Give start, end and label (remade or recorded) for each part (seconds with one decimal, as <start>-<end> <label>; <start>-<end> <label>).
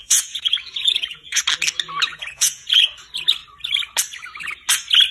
0.0-1.4 remade; 1.4-2.1 recorded; 2.1-2.8 remade; 2.8-5.1 recorded